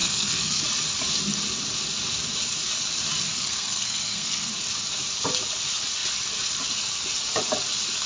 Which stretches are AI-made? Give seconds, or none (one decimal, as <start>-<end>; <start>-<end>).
0.0-0.6; 3.3-4.5